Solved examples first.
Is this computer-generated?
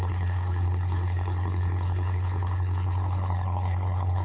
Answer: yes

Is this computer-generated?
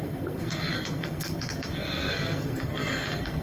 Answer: yes